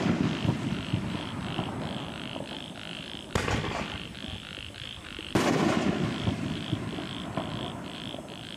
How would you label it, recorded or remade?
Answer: remade